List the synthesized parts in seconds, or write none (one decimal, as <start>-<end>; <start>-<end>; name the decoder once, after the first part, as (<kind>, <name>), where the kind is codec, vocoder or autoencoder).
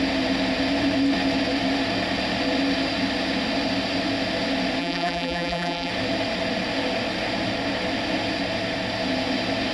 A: 4.8-5.9 (vocoder, BigVGAN v2)